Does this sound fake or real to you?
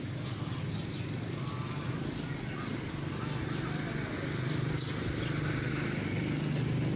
real